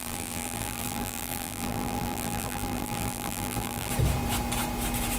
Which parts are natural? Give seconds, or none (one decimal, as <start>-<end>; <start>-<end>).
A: 3.9-5.2